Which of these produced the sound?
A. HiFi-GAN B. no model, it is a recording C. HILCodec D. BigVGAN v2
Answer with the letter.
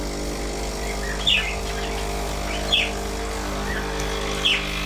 B